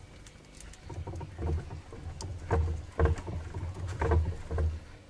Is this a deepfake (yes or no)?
no